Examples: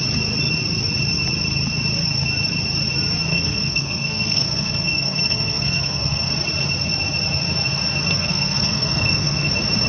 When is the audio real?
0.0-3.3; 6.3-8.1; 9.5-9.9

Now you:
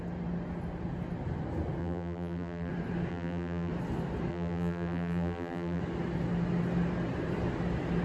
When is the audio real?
0.0-1.8; 2.7-3.1; 3.7-4.3; 5.8-8.0

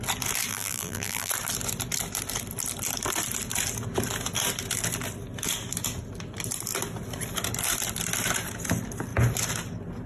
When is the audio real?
0.0-0.5; 1.3-10.1

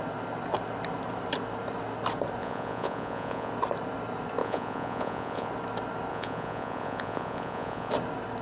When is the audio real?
0.0-2.4; 3.5-4.4; 5.5-6.1; 7.9-8.4